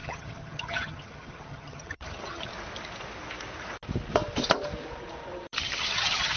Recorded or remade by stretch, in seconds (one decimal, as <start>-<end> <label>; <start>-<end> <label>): 0.0-2.5 remade; 2.5-5.8 recorded; 5.8-6.4 remade

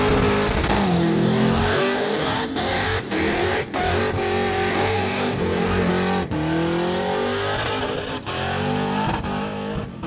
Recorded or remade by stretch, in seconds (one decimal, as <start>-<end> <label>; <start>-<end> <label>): 0.0-0.6 recorded; 0.6-4.0 remade; 4.0-4.7 recorded; 4.7-5.9 remade; 5.9-10.1 recorded